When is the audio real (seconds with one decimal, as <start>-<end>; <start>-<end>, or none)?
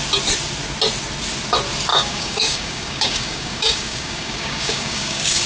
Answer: 0.0-1.9